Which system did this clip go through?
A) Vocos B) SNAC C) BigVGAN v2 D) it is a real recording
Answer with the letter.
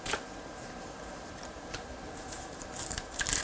C